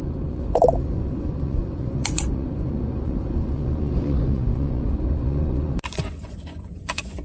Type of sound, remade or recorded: remade